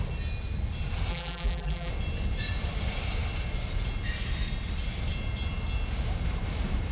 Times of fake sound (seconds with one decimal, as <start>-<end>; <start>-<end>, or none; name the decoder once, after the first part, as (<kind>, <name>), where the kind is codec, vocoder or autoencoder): 1.1-1.9 (vocoder, BigVGAN v2)

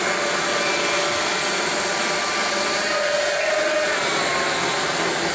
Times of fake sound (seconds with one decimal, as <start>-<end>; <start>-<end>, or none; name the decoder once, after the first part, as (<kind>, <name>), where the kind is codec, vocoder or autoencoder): none

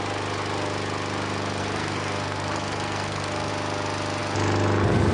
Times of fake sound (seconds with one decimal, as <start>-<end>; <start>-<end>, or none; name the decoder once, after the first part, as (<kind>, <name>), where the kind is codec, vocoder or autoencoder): 1.6-3.5 (codec, SNAC)

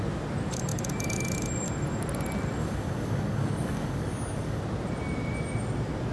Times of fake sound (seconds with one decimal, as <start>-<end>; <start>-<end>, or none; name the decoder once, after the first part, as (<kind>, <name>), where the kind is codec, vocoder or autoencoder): 2.6-4.6 (codec, DAC)